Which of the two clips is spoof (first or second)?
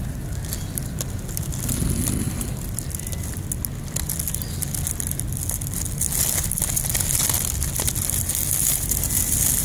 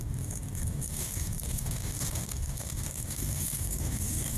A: second